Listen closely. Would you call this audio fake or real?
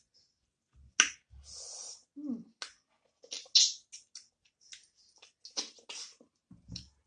real